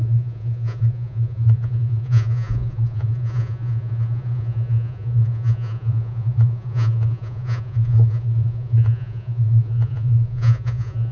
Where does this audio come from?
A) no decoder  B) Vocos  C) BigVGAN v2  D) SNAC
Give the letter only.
B